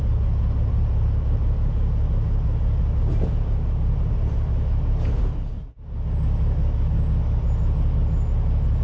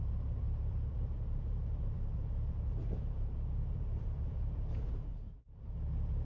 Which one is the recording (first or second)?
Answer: first